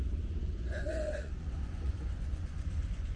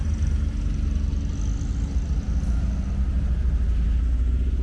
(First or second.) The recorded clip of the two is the second